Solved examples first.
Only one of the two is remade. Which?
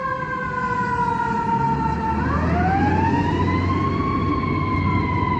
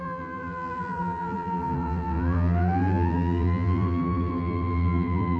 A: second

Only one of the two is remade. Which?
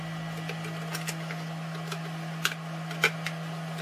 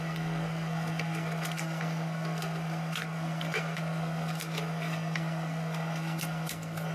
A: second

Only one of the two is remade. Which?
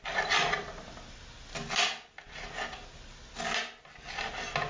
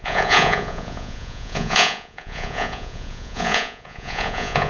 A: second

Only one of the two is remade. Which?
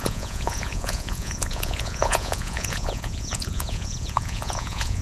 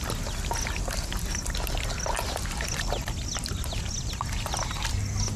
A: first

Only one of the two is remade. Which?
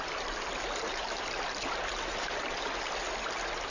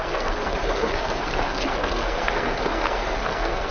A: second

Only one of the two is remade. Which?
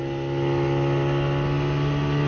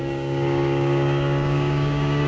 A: second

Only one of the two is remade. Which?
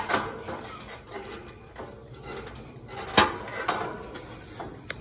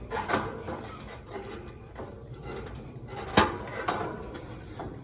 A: second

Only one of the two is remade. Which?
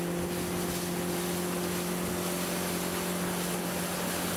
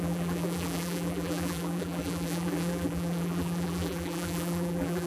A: second